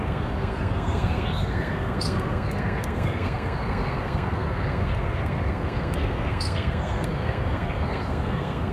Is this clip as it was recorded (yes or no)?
no